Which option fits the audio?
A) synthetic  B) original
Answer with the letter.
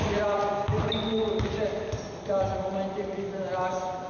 B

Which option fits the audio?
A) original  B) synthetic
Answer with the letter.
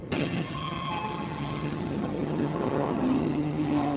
B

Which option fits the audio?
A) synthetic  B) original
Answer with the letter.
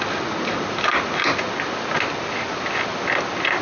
B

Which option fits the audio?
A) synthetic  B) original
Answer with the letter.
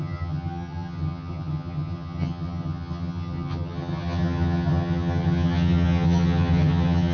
A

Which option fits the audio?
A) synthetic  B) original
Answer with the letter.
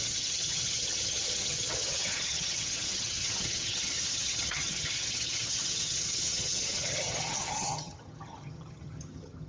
A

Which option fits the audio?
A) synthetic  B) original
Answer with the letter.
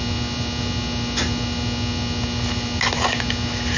B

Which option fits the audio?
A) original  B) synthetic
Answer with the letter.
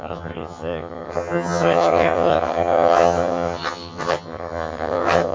B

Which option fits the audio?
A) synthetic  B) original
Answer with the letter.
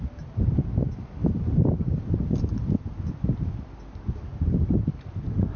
B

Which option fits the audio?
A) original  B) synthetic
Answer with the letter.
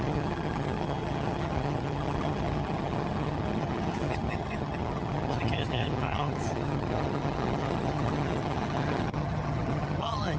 B